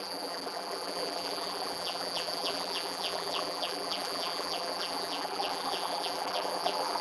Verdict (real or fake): fake